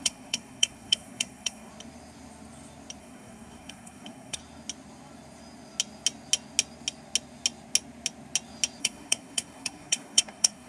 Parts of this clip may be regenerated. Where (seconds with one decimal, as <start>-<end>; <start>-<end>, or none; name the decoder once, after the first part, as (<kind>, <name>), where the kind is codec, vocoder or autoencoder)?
0.0-1.7 (codec, SNAC); 3.0-4.4; 8.8-10.7